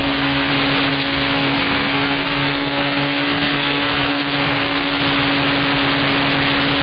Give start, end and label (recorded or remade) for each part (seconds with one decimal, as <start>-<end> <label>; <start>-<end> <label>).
0.0-0.5 remade; 0.5-0.9 recorded; 0.9-5.0 remade; 5.0-6.8 recorded